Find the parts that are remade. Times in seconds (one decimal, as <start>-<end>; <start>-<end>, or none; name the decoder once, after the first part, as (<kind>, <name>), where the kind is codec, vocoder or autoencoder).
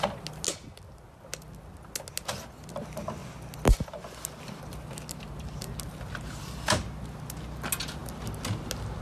none